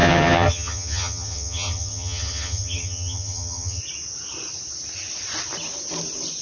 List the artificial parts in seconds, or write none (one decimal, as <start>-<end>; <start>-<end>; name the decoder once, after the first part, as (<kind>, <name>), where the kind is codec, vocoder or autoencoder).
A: 0.0-3.8 (vocoder, HiFi-GAN)